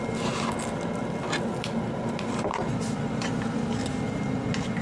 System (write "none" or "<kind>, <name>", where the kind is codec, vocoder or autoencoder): none